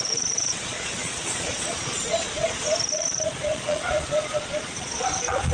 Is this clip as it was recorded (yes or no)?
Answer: no